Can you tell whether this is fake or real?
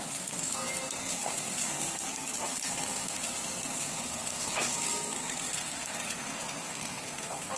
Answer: fake